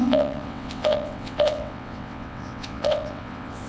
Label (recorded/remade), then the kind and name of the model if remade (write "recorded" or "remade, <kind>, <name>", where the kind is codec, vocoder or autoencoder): remade, vocoder, WaveNeXt